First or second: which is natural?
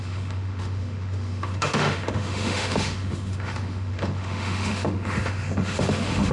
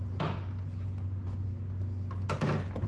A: second